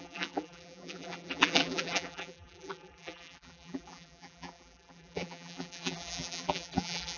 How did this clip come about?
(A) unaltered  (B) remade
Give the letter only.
B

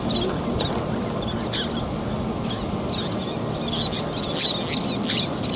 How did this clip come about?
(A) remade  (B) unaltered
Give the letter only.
B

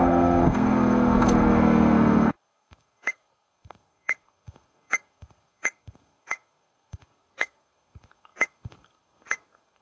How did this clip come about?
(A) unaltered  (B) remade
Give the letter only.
B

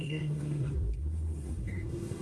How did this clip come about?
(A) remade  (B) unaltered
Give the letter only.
A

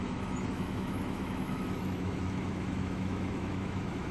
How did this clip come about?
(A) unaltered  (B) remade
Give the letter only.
B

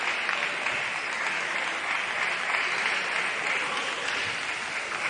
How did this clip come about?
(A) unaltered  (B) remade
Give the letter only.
A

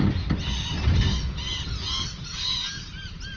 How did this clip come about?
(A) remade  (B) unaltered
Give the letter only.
B